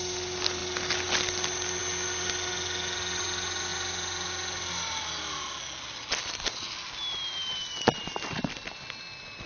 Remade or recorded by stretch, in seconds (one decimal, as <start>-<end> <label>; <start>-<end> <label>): 0.0-9.5 recorded